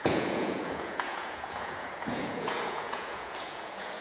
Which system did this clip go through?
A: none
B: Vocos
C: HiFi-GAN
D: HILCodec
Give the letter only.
B